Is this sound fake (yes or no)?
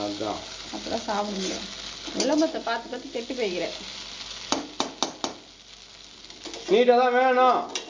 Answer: no